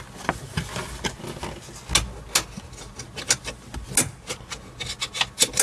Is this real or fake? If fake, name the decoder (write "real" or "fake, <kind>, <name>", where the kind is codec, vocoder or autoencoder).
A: real